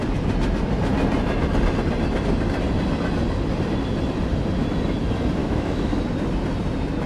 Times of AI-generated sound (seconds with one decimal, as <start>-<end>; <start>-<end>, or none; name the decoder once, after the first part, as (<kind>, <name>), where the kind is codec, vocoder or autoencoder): 5.4-6.0 (autoencoder, DAC-VAE)